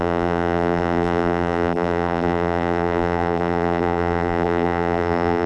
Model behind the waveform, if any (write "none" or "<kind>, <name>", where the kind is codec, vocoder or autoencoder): vocoder, BigVGAN v2